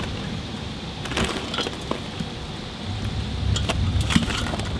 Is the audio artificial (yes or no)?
no